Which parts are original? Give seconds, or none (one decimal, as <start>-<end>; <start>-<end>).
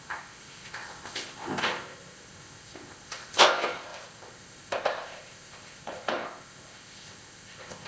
none